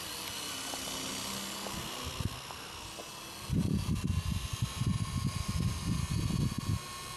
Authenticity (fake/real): real